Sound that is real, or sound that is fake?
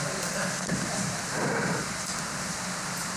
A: real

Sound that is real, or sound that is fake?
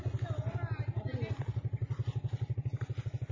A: real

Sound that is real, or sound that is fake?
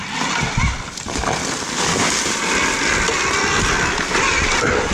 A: real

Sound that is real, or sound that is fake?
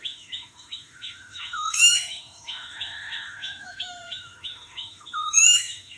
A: fake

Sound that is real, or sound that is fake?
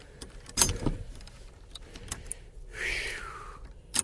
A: real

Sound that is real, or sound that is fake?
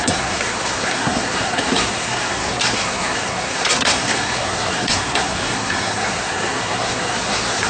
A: fake